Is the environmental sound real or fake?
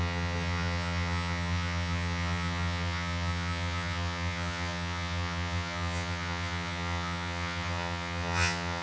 fake